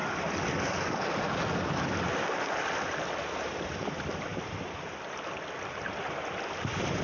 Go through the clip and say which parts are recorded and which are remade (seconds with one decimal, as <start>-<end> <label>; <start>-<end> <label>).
0.0-7.0 recorded